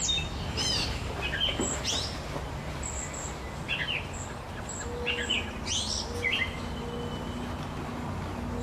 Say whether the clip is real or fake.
real